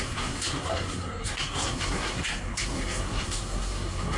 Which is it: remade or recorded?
remade